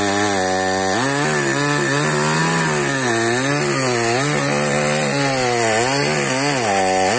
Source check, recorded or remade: recorded